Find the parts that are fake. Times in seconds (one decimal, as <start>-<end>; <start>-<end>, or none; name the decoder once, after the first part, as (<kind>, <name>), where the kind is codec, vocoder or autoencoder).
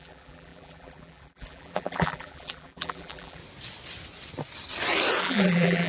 0.0-3.4 (vocoder, BigVGAN v2); 5.2-5.9